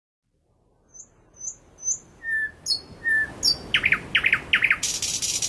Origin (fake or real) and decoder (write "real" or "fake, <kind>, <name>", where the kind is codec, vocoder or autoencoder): real